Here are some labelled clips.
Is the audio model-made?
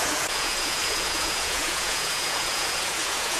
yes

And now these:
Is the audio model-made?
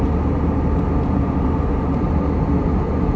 no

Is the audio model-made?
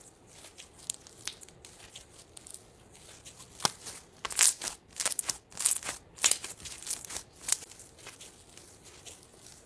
no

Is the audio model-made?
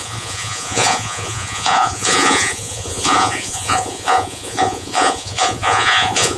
yes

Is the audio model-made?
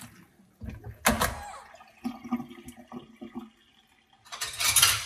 no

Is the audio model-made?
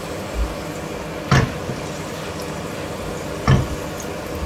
no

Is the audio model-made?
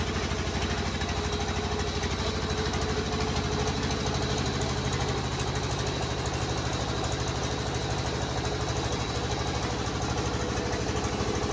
no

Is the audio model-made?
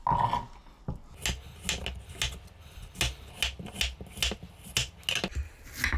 no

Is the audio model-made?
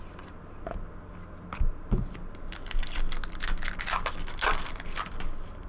no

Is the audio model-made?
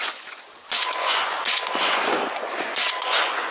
yes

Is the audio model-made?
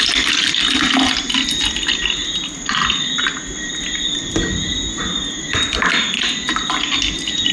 no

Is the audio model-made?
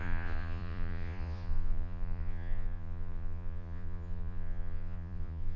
yes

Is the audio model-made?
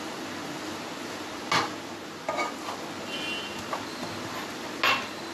no